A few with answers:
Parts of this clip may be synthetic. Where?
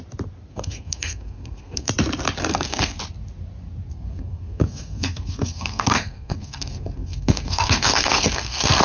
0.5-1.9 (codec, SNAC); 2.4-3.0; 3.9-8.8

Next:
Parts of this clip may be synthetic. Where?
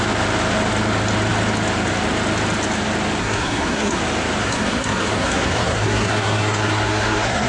3.2-4.0 (codec, SNAC); 4.4-7.5